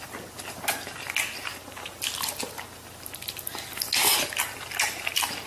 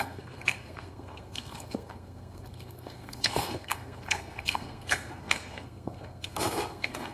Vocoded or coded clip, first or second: second